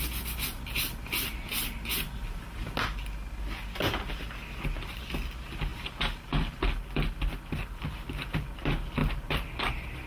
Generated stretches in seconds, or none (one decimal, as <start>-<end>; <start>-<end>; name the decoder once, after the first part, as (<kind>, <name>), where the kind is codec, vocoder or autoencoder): none